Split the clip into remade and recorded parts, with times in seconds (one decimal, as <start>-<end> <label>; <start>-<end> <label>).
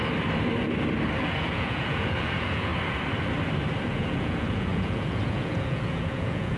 0.0-1.2 recorded; 1.2-2.7 remade; 2.7-3.9 recorded; 3.9-6.6 remade